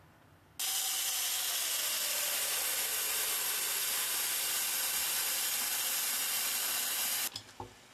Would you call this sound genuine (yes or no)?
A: yes